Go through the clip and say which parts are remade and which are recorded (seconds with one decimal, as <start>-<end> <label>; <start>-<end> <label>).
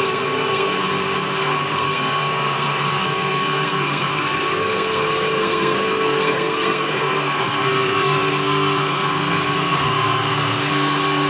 0.0-0.8 remade; 0.8-1.4 recorded; 1.4-11.3 remade